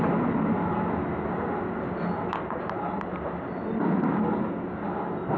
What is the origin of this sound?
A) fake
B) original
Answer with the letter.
B